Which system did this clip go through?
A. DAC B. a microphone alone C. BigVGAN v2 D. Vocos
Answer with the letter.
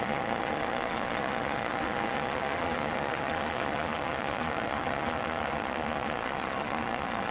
D